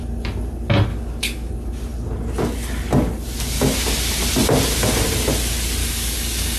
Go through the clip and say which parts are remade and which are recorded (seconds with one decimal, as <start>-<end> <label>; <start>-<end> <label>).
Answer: 0.0-0.9 recorded; 0.9-1.5 remade; 1.5-5.8 recorded; 5.8-6.6 remade